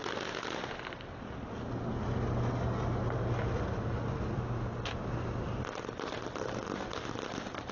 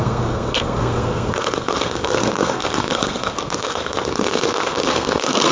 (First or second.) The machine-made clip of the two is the second